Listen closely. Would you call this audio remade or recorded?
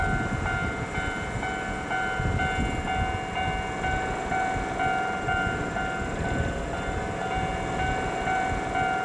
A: recorded